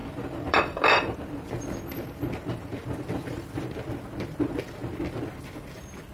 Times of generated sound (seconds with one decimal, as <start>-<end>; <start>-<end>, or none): 0.0-3.7